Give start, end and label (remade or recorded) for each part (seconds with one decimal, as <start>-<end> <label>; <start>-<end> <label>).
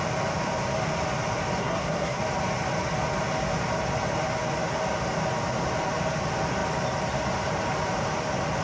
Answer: 0.0-1.6 recorded; 1.6-2.2 remade; 2.2-8.6 recorded